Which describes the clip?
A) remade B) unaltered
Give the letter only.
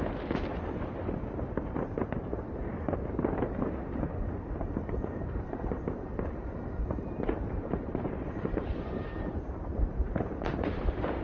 A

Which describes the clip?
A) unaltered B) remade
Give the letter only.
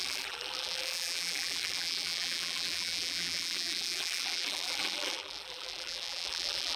B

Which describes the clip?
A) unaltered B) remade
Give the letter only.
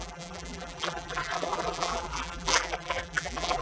B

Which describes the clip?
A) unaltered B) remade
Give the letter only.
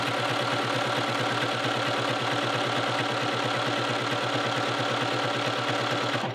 A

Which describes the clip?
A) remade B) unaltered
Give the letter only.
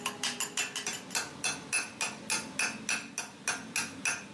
B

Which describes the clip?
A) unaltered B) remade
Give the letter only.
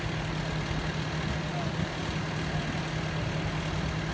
A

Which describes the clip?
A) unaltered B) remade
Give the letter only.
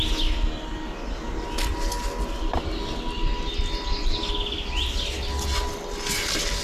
A